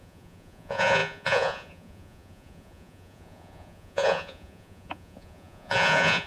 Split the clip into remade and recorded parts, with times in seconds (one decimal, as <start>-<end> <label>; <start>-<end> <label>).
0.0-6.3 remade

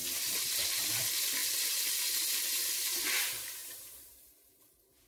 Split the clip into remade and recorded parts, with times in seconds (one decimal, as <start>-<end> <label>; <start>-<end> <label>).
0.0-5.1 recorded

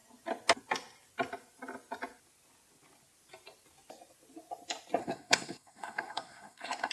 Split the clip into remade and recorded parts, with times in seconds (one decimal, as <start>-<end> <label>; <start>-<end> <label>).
0.0-5.0 recorded; 5.0-6.9 remade

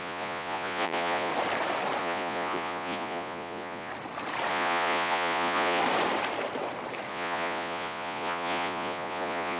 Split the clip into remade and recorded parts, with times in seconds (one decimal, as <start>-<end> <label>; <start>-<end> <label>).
0.0-1.3 remade; 1.3-2.0 recorded; 2.0-3.9 remade; 3.9-4.5 recorded; 4.5-5.8 remade; 5.8-7.1 recorded; 7.1-9.6 remade

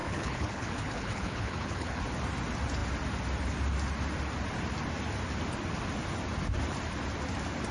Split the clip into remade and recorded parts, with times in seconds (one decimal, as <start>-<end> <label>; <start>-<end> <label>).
0.0-2.0 remade; 2.0-7.7 recorded

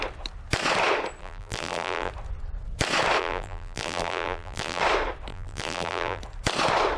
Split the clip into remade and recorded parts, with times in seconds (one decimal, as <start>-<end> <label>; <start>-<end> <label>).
0.0-1.2 recorded; 1.2-2.1 remade; 2.1-3.2 recorded; 3.2-4.8 remade; 4.8-5.3 recorded; 5.3-6.2 remade; 6.2-7.0 recorded